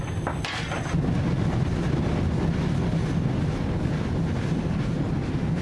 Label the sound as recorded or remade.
recorded